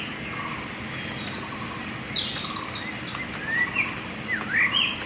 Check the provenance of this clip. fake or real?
real